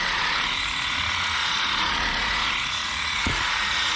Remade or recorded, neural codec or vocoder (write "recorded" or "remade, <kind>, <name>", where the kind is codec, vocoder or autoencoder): remade, vocoder, Vocos